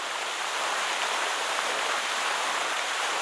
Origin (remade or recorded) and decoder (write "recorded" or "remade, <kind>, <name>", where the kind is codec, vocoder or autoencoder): remade, vocoder, BigVGAN v2